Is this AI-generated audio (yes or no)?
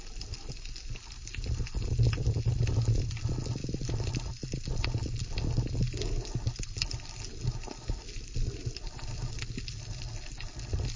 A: no